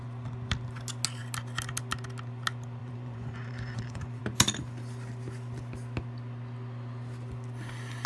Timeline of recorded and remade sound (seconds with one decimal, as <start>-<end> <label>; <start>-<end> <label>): 0.0-2.8 recorded; 2.8-4.2 remade; 4.2-8.1 recorded